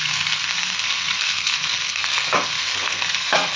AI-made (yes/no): yes